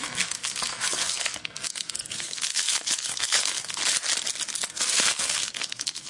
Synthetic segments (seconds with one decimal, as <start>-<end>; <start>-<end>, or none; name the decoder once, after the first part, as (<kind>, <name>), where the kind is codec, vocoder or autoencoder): 0.0-3.8 (codec, SNAC); 4.7-6.1